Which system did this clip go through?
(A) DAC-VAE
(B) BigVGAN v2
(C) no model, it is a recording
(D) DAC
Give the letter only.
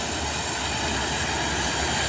C